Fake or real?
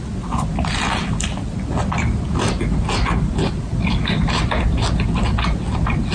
real